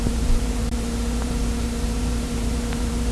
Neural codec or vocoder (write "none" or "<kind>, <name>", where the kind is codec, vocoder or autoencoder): vocoder, BigVGAN v2